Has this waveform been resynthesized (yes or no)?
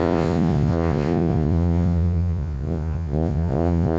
yes